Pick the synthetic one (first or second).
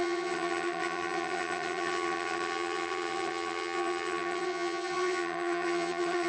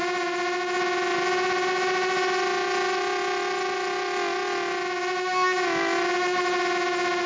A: first